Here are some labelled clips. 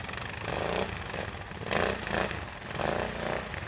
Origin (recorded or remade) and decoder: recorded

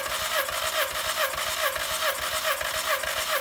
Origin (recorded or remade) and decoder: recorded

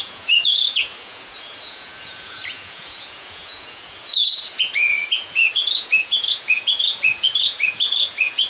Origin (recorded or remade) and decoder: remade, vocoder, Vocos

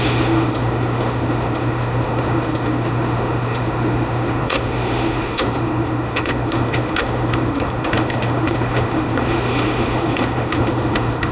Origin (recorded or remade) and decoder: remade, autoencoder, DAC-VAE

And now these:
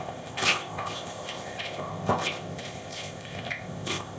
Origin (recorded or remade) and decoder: remade, codec, ZipCodec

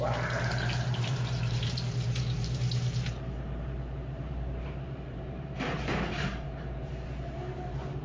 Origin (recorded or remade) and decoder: remade, vocoder, BigVGAN v2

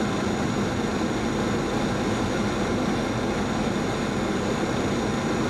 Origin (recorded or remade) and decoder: recorded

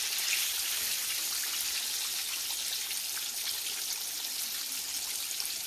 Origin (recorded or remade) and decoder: recorded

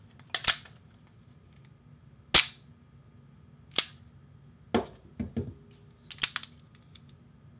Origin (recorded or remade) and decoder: recorded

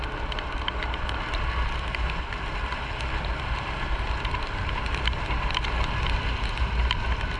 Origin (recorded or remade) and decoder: recorded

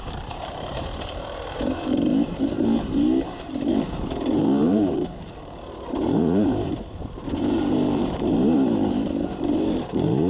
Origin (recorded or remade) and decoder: remade, vocoder, BigVGAN v2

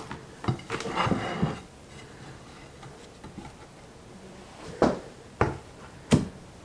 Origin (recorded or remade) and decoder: recorded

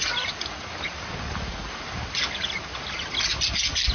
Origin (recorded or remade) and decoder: recorded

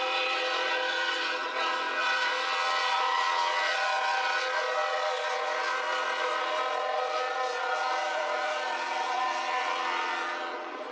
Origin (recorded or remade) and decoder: remade, vocoder, Vocos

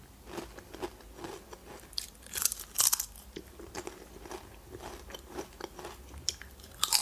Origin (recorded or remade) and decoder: recorded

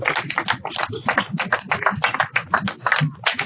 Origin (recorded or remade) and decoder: recorded